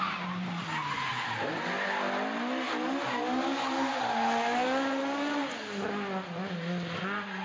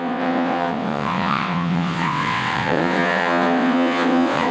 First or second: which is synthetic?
second